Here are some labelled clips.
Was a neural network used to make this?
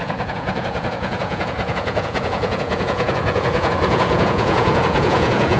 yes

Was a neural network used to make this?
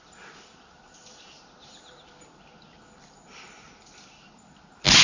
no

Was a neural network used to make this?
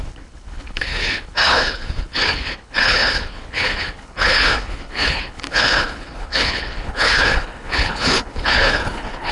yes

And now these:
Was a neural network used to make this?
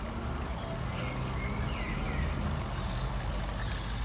no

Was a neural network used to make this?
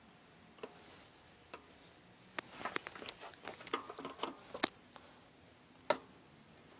no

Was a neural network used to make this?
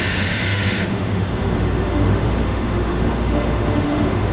yes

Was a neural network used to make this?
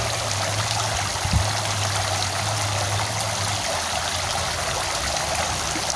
no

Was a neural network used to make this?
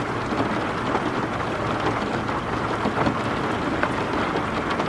no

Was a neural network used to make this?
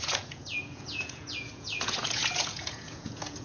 yes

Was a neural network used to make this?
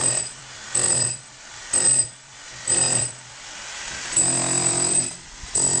yes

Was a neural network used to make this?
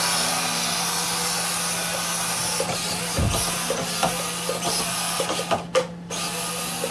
no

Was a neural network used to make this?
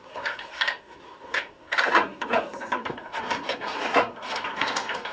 yes